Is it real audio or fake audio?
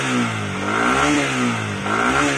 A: real